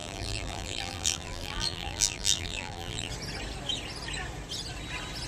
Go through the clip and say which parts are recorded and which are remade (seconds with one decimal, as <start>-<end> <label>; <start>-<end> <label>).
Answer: 0.0-3.1 remade; 3.1-5.3 recorded

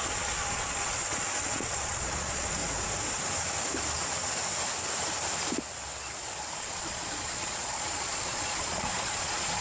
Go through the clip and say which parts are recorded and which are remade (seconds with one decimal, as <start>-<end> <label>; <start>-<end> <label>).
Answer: 0.0-2.6 remade; 2.6-6.6 recorded; 6.6-9.6 remade

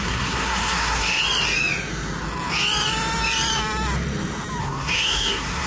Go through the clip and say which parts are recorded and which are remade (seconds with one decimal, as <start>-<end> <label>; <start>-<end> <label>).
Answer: 0.0-1.2 remade; 1.2-4.6 recorded; 4.6-5.7 remade

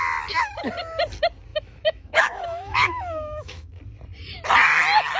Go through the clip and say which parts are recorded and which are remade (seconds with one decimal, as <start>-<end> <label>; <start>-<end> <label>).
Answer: 0.0-1.5 recorded; 1.5-3.7 remade; 3.7-5.2 recorded

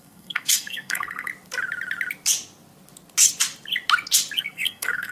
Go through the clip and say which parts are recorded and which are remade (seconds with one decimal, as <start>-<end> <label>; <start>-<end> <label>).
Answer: 0.0-1.3 remade; 1.3-4.4 recorded; 4.4-5.1 remade

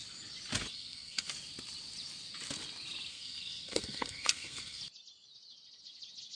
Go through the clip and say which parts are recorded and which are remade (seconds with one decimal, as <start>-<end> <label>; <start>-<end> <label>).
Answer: 0.0-0.7 recorded; 0.7-1.3 remade; 1.3-3.1 recorded; 3.1-4.8 remade; 4.8-6.4 recorded